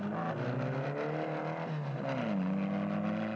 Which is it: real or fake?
real